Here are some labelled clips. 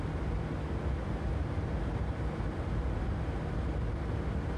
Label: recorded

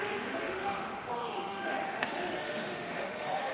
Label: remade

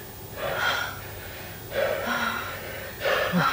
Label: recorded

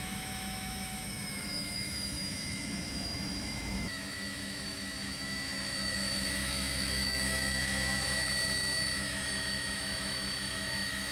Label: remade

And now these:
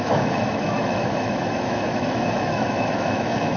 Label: remade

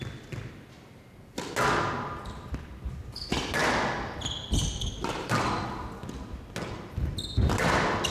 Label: recorded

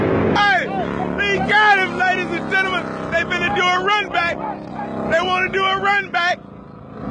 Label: recorded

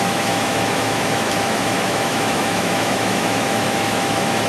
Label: remade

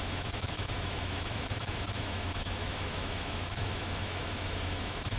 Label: remade